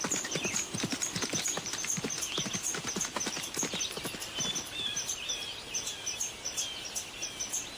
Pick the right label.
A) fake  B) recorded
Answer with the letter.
B